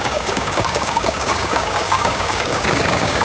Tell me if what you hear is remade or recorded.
remade